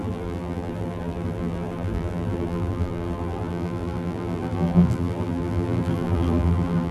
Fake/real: fake